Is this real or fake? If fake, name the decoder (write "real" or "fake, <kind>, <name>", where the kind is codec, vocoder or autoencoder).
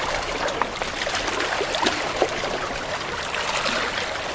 real